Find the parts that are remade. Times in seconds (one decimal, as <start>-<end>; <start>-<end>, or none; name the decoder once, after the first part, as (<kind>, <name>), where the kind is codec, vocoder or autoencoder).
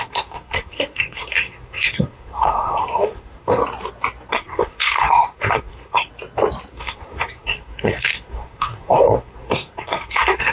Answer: 0.0-3.6 (codec, SNAC); 4.3-6.1; 6.7-10.5